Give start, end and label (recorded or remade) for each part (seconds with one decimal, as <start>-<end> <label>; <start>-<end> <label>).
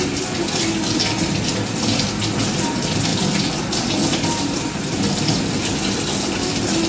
0.0-6.9 recorded